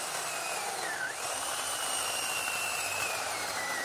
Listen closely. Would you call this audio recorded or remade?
remade